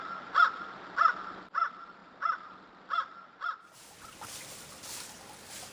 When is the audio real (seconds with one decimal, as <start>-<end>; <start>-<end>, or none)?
0.0-5.7